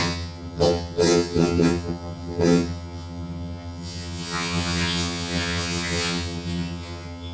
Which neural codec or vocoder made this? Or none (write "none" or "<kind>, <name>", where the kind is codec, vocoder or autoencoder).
vocoder, HiFi-GAN